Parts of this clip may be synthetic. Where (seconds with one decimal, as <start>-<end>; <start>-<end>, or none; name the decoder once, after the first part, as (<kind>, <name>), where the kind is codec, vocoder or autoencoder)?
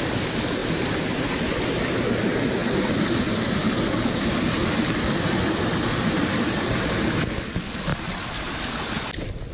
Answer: 2.6-7.5 (vocoder, BigVGAN v2); 7.9-8.5